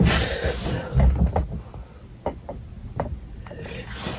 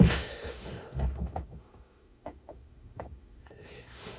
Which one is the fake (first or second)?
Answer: second